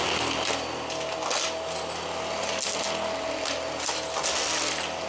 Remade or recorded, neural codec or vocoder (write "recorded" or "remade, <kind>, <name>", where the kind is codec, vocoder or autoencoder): recorded